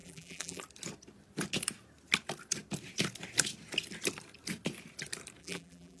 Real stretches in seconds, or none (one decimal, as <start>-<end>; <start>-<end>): 0.6-5.4